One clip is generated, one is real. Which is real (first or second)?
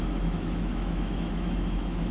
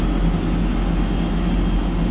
second